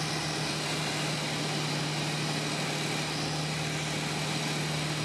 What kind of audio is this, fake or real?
real